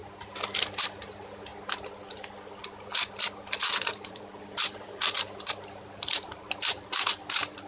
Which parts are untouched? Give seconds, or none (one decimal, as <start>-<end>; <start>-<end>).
0.0-0.7; 1.5-3.6